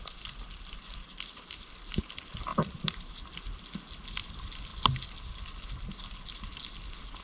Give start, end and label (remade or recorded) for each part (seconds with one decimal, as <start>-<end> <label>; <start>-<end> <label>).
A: 0.0-2.5 recorded; 2.5-3.2 remade; 3.2-7.2 recorded